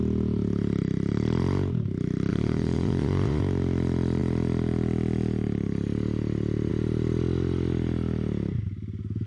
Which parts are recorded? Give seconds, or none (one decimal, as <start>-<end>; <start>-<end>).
0.0-2.3; 3.4-9.3